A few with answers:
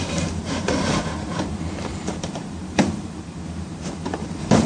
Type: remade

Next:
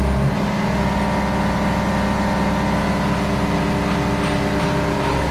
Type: recorded